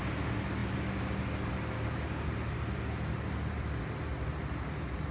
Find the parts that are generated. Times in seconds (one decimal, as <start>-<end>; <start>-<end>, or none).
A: none